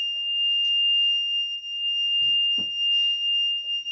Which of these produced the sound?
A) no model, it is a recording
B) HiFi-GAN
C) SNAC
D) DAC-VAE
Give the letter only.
A